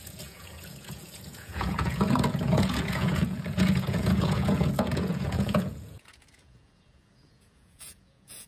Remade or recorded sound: remade